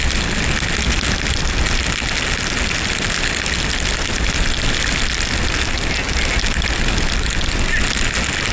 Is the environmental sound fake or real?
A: real